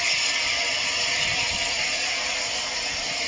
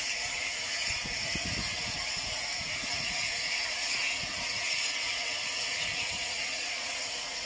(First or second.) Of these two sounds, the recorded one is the first